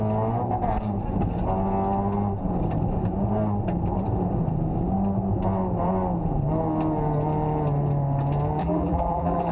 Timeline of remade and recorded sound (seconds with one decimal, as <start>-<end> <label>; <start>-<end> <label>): 0.0-8.6 recorded; 8.6-9.5 remade